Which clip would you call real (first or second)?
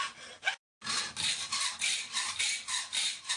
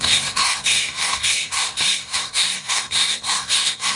first